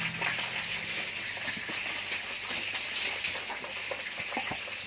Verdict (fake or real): real